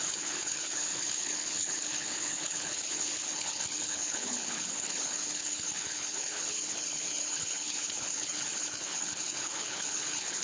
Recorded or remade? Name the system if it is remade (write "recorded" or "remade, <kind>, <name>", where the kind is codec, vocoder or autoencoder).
remade, codec, HILCodec